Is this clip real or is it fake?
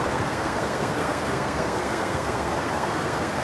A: fake